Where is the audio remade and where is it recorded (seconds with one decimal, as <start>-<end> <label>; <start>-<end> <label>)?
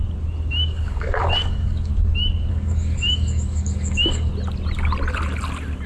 0.0-0.5 recorded; 0.5-1.9 remade; 1.9-2.5 recorded; 2.5-4.3 remade; 4.3-5.9 recorded